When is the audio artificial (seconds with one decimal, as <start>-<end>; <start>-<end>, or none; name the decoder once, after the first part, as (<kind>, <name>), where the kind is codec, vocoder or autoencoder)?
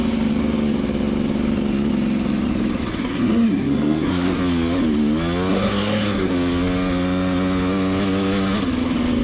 3.0-4.4 (codec, SNAC); 5.5-6.3